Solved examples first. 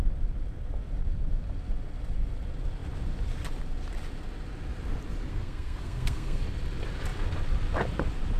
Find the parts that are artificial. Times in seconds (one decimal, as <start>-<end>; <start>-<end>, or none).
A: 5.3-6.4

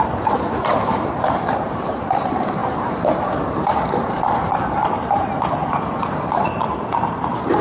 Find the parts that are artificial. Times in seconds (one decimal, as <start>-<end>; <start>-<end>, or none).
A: 0.0-7.6

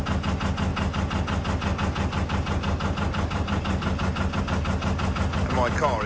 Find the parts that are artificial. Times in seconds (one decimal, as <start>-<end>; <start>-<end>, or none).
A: none

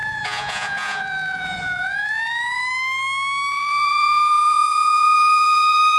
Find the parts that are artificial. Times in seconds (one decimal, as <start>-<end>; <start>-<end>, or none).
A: 0.0-2.6; 3.5-6.0